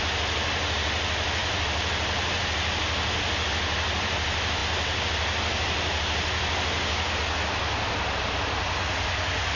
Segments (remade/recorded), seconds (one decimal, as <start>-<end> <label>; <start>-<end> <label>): 0.0-9.6 recorded